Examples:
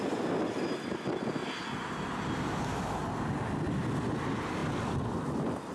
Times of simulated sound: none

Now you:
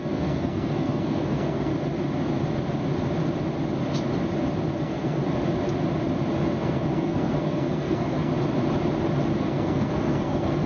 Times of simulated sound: 0.0-1.7; 4.8-5.2; 6.6-8.3; 9.4-10.7